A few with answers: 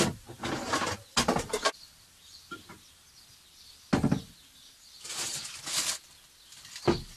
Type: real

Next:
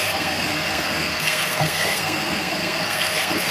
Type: fake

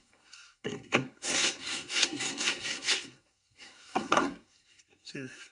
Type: fake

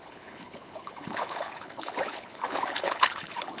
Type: fake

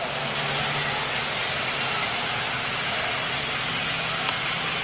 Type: real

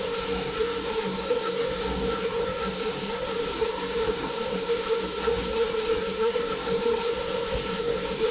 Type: fake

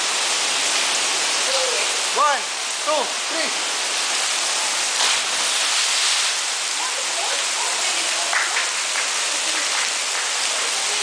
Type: real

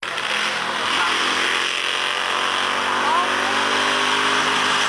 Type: real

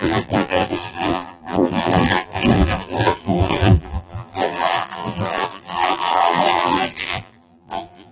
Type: fake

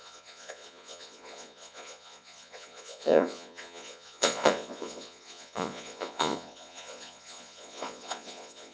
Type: fake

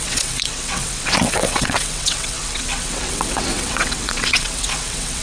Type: fake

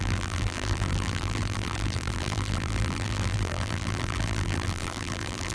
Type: fake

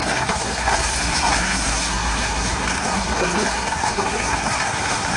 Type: fake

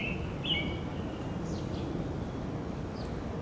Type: real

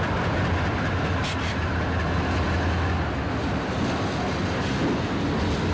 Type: real